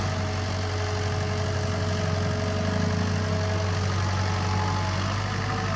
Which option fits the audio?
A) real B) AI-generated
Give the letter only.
A